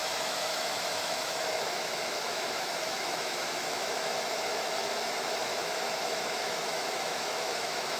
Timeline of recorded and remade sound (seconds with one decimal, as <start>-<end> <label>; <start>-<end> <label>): 0.0-8.0 remade